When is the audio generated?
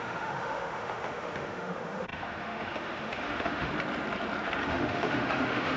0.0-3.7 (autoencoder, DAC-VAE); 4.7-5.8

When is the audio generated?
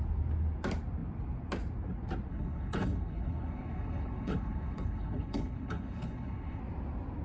2.3-6.6 (codec, HILCodec)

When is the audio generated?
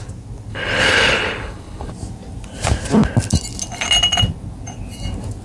0.5-1.9 (codec, HILCodec)